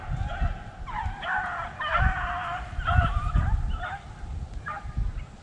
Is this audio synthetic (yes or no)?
no